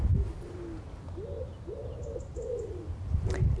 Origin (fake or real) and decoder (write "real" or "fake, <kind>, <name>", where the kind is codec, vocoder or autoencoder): real